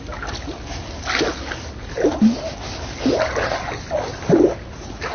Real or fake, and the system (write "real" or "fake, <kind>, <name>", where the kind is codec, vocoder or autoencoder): real